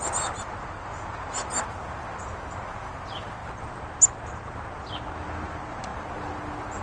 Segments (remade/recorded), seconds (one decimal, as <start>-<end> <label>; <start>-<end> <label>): 0.0-6.8 recorded